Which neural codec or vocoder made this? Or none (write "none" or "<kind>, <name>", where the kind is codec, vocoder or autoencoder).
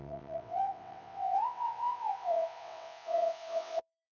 vocoder, WaveNeXt